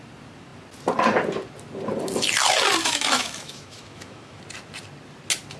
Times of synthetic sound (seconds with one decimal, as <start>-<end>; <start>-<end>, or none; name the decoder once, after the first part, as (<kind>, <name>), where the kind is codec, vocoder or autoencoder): 2.8-4.4 (autoencoder, DAC-VAE)